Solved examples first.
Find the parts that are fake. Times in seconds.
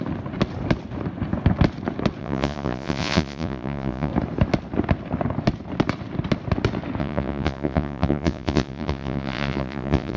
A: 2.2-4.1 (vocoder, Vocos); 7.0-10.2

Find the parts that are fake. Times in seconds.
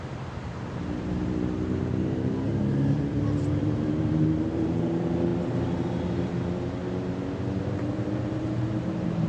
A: 0.0-5.3 (vocoder, BigVGAN v2); 7.6-9.3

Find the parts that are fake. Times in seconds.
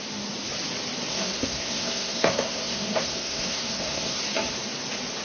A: 1.1-4.2 (codec, SNAC)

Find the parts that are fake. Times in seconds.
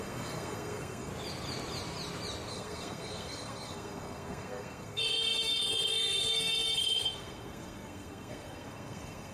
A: 0.0-1.1 (codec, SNAC); 2.5-9.3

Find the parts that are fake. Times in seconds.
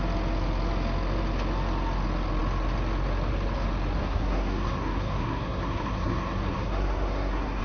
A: 4.0-7.6 (codec, SNAC)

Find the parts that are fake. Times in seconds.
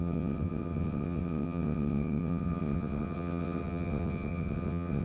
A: 0.0-5.0 (vocoder, WaveNeXt)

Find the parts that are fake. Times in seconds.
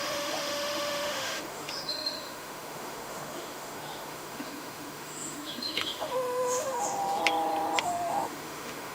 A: 0.0-7.2 (autoencoder, DAC-VAE); 7.8-8.9